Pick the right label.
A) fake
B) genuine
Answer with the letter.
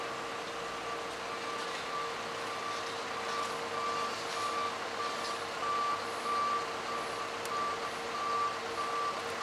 B